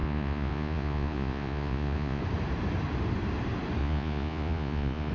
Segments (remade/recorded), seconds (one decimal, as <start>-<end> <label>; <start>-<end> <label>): 0.0-2.2 remade; 2.2-3.8 recorded; 3.8-5.1 remade